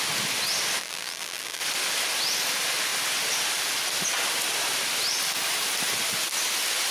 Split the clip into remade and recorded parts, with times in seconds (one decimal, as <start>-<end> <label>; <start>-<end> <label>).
0.0-0.8 recorded; 0.8-1.6 remade; 1.6-6.9 recorded